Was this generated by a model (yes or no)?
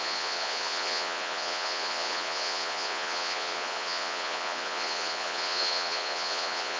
yes